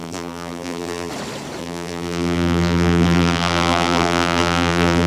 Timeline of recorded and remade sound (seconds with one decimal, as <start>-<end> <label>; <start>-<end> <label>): 0.0-1.1 remade; 1.1-1.6 recorded; 1.6-5.1 remade